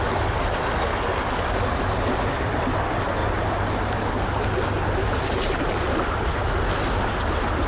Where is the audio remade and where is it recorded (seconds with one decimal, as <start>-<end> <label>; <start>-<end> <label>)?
0.0-7.7 recorded

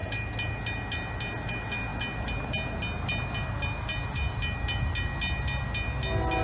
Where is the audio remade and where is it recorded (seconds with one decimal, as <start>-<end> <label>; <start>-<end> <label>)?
0.0-6.4 recorded

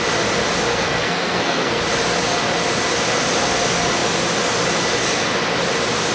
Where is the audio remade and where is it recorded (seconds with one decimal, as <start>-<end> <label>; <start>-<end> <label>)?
0.0-0.7 recorded; 0.7-1.8 remade; 1.8-6.1 recorded